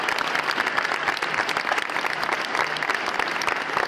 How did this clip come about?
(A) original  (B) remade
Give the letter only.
A